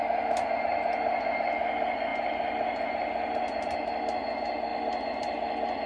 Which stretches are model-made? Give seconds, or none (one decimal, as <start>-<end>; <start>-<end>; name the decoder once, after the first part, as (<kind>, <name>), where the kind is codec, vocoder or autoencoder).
4.7-5.9 (vocoder, BigVGAN v2)